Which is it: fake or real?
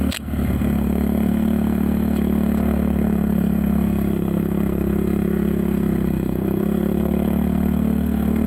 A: fake